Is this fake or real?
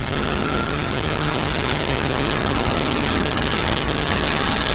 fake